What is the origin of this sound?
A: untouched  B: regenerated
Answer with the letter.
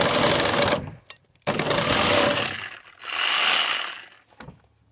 A